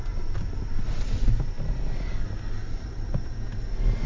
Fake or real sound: real